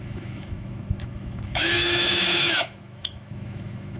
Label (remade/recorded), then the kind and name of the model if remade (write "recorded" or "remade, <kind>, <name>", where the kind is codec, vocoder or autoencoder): remade, autoencoder, DAC-VAE